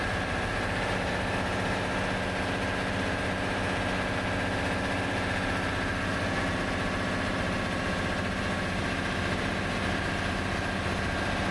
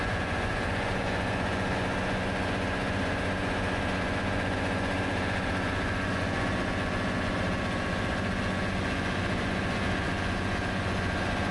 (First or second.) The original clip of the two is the first